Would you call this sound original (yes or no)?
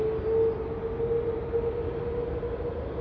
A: yes